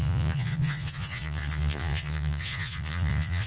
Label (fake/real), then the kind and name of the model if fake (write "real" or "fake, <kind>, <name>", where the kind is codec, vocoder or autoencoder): fake, vocoder, Vocos